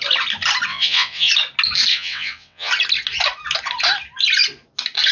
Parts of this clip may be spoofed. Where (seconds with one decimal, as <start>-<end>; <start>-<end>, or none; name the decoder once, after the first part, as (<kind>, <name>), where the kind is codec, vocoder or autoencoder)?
0.7-1.3 (vocoder, WaveNeXt); 1.9-2.7